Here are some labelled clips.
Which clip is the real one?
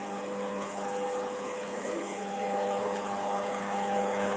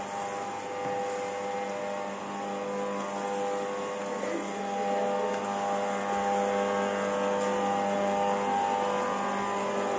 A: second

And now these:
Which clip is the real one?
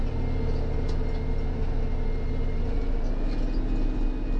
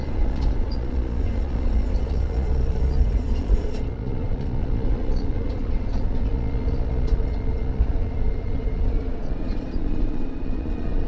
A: first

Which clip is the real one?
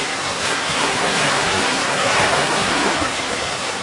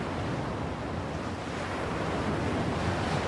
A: second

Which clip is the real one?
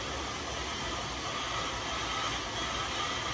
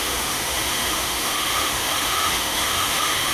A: first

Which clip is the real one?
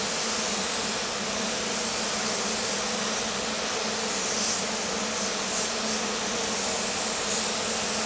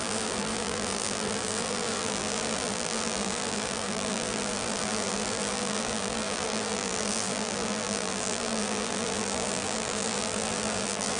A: first